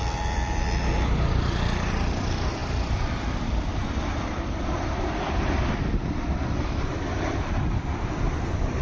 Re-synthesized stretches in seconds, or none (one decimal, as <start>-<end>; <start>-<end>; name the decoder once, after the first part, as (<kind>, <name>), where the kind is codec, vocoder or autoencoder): 0.0-8.8 (vocoder, BigVGAN v2)